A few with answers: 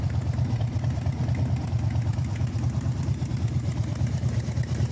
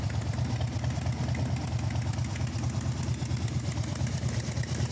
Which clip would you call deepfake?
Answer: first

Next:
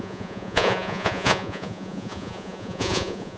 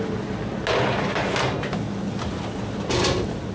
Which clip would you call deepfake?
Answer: first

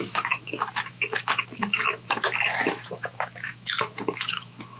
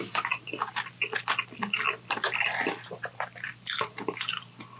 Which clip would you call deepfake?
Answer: first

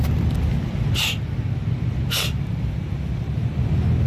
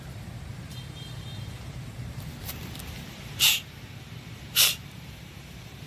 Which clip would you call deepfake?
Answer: second